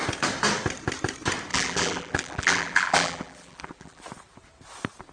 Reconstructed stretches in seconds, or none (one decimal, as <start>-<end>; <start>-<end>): 1.5-4.0